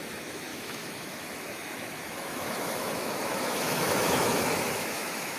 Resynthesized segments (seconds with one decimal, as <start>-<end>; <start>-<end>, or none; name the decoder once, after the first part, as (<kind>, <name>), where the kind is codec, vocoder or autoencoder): 0.0-5.4 (autoencoder, DAC-VAE)